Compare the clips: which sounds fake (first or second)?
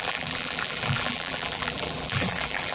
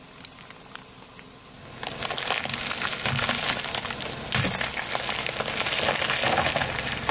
first